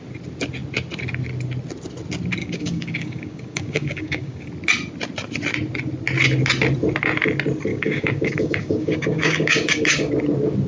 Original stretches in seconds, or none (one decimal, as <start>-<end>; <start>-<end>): 0.0-2.4; 4.5-7.7; 10.1-10.7